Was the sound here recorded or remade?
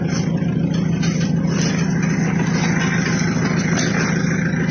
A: recorded